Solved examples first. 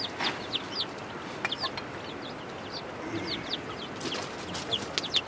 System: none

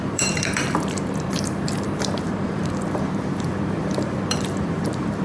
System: vocoder, BigVGAN v2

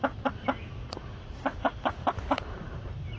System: vocoder, BigVGAN v2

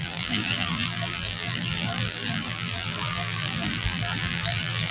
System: vocoder, BigVGAN v2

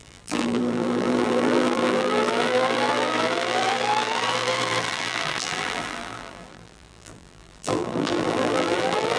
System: vocoder, BigVGAN v2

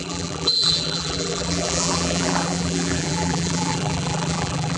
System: vocoder, BigVGAN v2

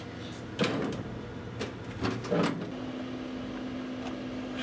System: none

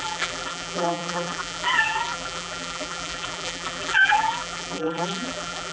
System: vocoder, BigVGAN v2